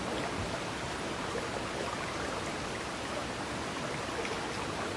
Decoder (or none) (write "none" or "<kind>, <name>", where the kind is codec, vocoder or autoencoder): none